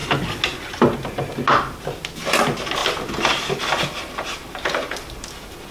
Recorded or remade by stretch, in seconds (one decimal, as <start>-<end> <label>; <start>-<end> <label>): 0.0-5.7 recorded